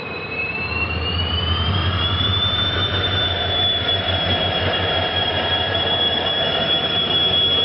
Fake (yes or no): yes